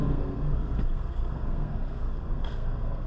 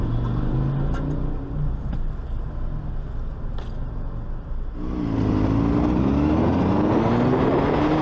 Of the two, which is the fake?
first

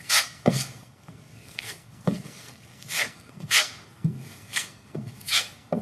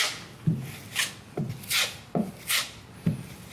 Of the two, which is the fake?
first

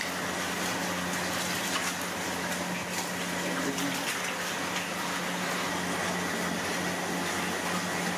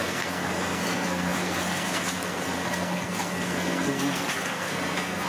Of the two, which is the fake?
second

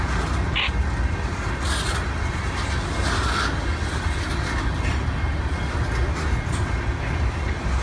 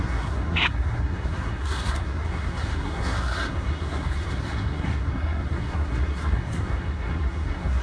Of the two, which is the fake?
second